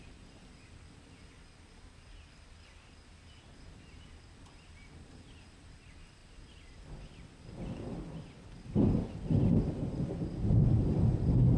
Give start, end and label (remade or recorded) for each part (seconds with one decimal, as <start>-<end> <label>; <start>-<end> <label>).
0.0-11.6 recorded